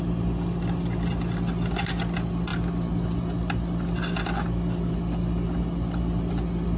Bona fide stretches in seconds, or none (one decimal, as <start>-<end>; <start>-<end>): 0.0-6.8